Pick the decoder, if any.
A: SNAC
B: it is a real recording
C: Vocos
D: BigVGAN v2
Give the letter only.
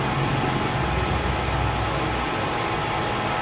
B